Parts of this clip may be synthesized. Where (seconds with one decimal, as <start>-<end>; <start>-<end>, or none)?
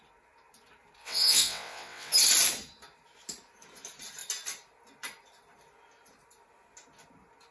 1.0-2.1